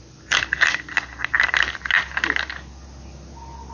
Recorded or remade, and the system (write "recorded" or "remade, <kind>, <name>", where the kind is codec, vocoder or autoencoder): recorded